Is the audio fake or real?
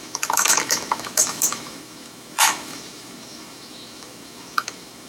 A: fake